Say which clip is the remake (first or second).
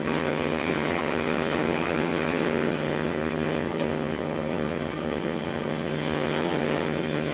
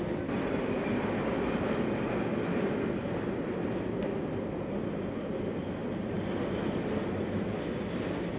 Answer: first